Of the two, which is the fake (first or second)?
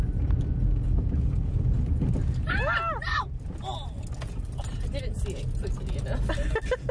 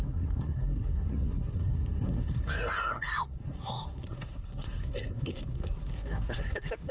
second